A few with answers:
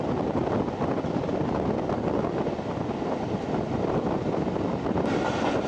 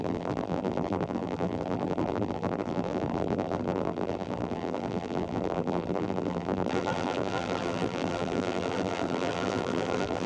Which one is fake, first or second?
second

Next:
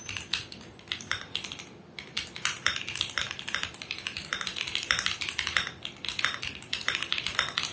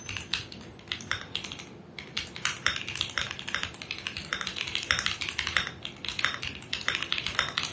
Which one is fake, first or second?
first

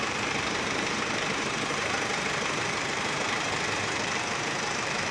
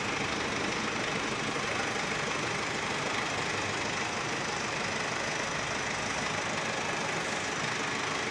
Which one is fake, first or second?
first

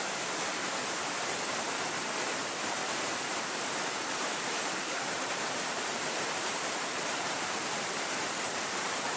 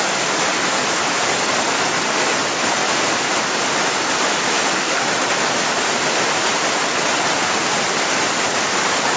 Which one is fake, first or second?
first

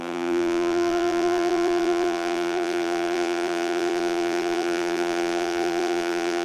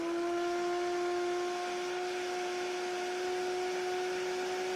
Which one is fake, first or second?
first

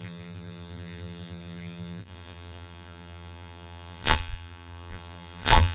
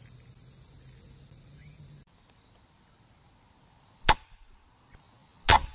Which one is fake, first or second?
first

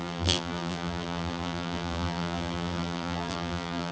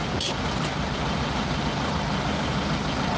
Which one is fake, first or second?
first